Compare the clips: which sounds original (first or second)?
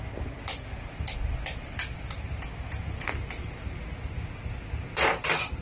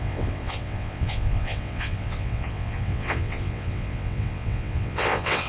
first